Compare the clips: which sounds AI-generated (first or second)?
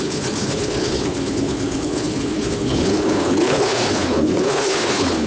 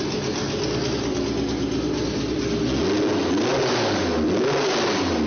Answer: first